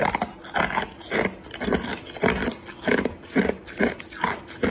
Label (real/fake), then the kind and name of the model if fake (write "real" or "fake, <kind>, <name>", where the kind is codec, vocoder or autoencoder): real